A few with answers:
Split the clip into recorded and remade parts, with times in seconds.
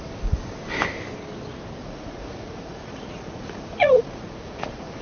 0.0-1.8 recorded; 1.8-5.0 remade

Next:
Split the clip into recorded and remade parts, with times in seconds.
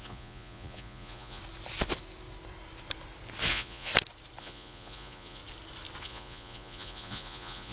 0.0-1.4 remade; 1.4-3.5 recorded; 3.5-3.9 remade; 3.9-4.4 recorded; 4.4-5.4 remade; 5.4-6.0 recorded; 6.0-7.7 remade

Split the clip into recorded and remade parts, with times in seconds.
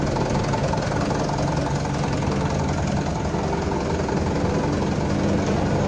0.0-5.9 recorded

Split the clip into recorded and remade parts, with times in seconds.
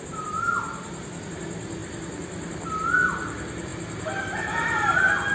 0.0-5.3 recorded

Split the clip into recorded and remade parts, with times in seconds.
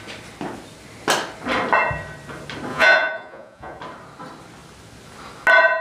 0.0-2.7 recorded; 2.7-3.8 remade; 3.8-5.8 recorded